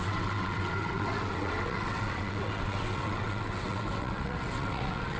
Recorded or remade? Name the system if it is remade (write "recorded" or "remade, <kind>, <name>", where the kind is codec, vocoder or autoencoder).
remade, vocoder, WaveNeXt